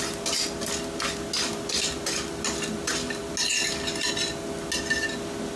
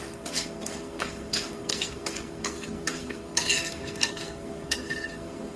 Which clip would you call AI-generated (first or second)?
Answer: second